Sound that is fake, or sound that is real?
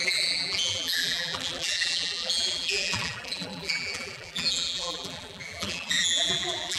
fake